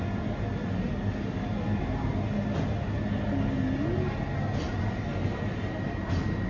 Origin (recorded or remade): recorded